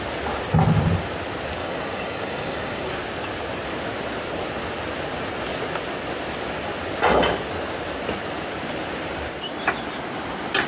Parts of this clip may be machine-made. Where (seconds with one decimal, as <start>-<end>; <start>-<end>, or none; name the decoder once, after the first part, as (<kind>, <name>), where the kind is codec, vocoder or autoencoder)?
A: 1.6-2.9 (codec, DAC)